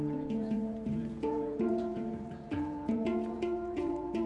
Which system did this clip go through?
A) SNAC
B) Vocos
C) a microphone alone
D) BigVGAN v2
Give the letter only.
B